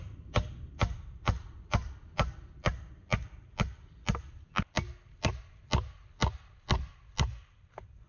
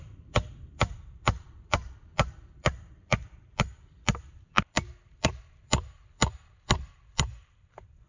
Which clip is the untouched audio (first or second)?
first